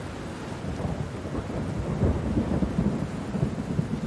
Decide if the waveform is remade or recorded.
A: recorded